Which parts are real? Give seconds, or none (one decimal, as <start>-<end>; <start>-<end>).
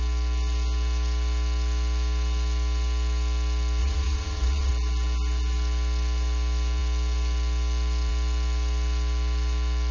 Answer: 0.0-3.8; 4.7-9.9